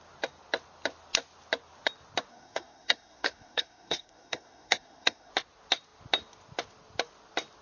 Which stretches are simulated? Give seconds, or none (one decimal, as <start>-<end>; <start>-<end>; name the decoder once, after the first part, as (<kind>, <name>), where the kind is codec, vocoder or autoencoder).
2.3-5.3 (codec, SNAC)